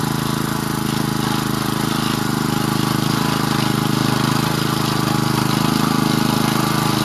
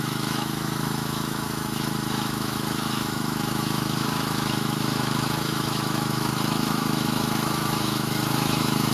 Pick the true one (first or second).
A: first